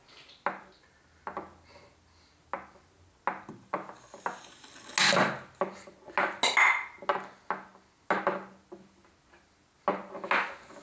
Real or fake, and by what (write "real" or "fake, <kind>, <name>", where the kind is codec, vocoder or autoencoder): real